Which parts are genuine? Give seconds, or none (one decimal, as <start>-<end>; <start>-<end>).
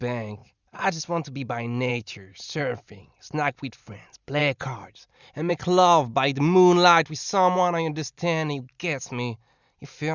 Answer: 0.0-0.4; 1.0-1.9; 2.6-10.1